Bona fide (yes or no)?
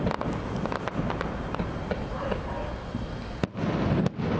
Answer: yes